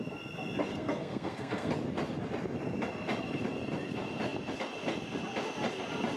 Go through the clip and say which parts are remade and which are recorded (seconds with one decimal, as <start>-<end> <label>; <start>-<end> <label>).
0.0-0.7 recorded; 0.7-1.7 remade; 1.7-6.2 recorded